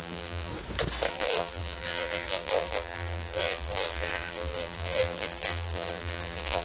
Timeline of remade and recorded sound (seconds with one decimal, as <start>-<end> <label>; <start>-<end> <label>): 0.0-0.5 remade; 0.5-1.1 recorded; 1.1-6.6 remade